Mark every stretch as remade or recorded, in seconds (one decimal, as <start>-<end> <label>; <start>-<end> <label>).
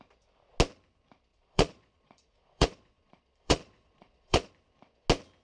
0.0-1.3 recorded; 1.3-4.5 remade; 4.5-5.4 recorded